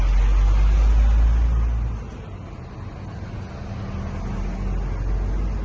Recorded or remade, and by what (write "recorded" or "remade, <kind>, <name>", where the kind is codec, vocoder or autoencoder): recorded